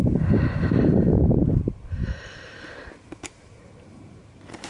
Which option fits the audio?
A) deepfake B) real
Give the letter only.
A